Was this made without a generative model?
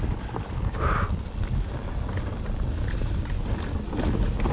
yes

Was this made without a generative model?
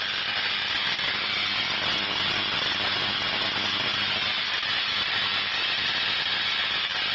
yes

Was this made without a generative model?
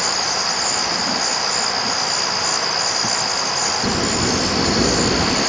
yes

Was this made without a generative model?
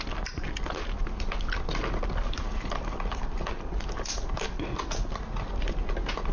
yes